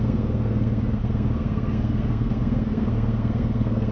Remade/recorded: remade